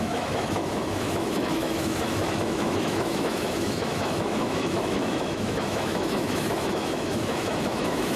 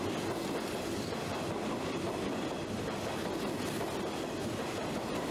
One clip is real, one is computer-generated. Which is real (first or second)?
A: second